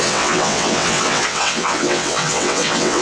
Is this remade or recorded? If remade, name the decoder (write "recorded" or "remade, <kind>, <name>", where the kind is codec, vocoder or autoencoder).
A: remade, vocoder, WaveNeXt